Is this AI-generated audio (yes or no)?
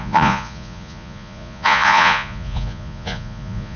yes